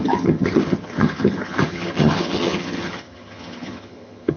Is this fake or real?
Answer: fake